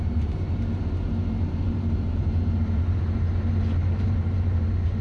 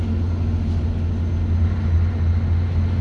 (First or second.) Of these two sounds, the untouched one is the second